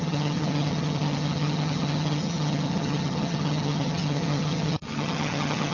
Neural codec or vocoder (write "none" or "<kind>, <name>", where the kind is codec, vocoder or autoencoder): vocoder, HiFi-GAN